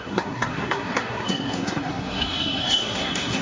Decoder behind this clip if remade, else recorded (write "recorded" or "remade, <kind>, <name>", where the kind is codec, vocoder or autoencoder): remade, codec, SNAC